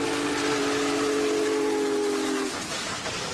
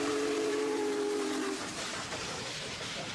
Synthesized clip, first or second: second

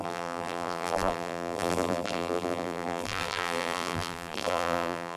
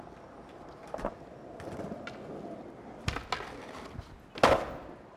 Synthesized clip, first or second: first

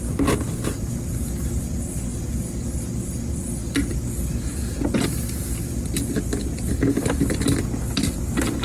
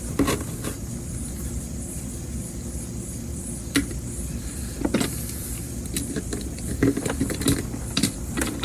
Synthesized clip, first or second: second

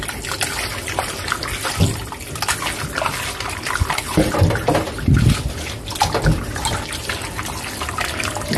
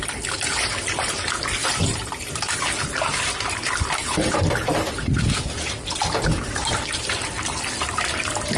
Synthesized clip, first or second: second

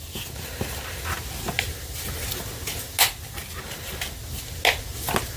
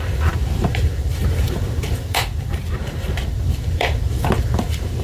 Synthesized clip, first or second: second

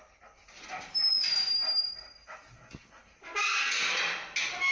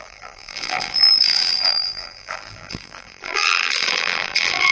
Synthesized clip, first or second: second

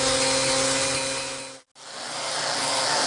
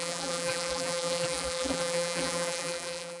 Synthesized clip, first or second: second